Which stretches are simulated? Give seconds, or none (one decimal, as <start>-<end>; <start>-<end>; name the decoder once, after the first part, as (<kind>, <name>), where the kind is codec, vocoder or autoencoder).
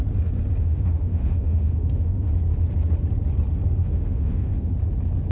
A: 0.6-2.3 (autoencoder, DAC-VAE); 3.8-4.7